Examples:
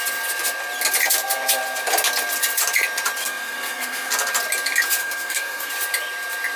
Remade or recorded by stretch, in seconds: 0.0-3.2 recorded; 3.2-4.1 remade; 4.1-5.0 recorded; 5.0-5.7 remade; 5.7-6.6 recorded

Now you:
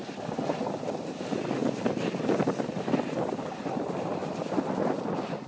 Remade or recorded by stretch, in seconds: 0.0-5.5 recorded

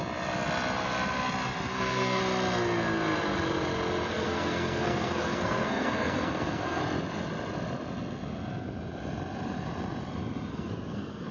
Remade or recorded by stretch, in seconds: 0.0-1.7 recorded; 1.7-2.2 remade; 2.2-4.1 recorded; 4.1-6.8 remade; 6.8-10.5 recorded; 10.5-11.3 remade

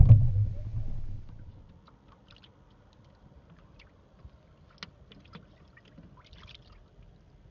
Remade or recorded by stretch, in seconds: 0.0-7.5 recorded